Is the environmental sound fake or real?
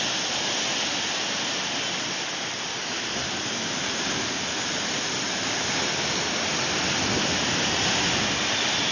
fake